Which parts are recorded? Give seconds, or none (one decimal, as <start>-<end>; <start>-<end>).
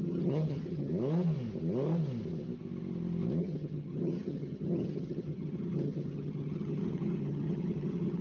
0.9-3.4